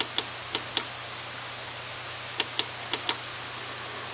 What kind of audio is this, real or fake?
real